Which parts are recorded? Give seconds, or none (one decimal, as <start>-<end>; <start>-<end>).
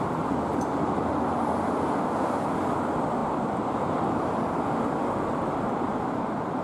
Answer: 0.0-0.5; 1.1-3.2; 6.0-6.6